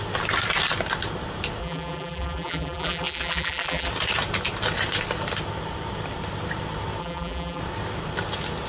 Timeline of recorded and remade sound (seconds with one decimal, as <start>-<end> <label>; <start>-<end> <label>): 0.0-1.6 recorded; 1.6-3.9 remade; 3.9-7.0 recorded; 7.0-7.6 remade; 7.6-8.7 recorded